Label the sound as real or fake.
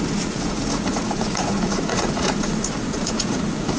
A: fake